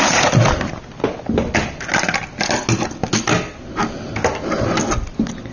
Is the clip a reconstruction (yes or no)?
no